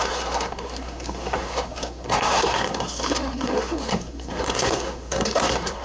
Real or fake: fake